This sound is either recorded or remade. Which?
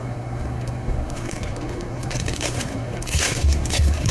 remade